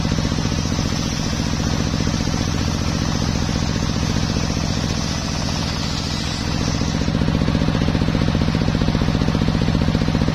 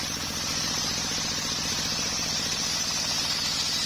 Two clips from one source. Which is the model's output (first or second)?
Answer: second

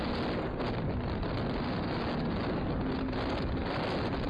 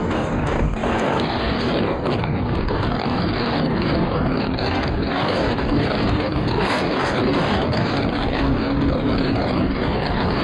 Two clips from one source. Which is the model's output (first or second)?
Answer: second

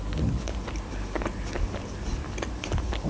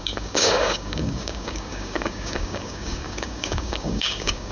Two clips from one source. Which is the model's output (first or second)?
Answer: second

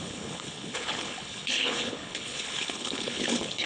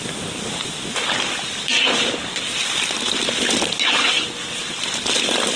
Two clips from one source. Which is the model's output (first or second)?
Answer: first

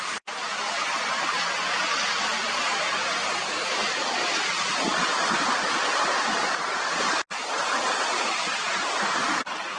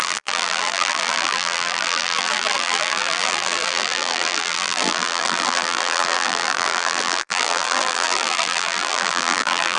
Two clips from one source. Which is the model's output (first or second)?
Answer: second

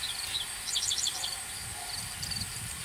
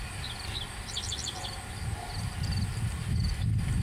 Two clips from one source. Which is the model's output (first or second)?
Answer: first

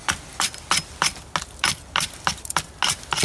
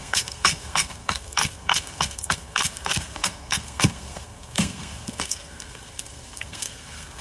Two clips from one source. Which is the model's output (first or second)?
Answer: second